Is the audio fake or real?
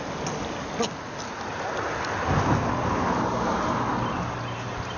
real